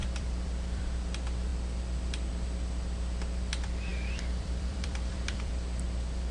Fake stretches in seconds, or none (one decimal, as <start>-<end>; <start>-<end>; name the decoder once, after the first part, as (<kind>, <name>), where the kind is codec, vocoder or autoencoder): 0.0-0.8 (vocoder, BigVGAN v2); 3.9-5.5